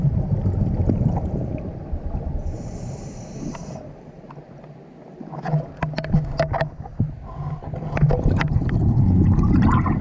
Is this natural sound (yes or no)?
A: yes